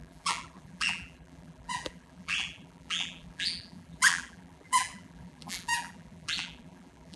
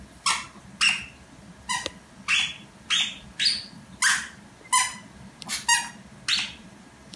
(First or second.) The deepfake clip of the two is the first